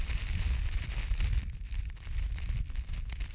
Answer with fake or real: real